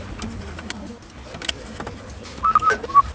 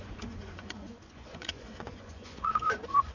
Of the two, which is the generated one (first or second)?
second